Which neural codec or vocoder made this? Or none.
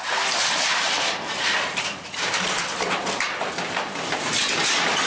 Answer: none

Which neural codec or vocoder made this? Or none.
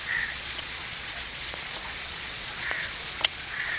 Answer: vocoder, Vocos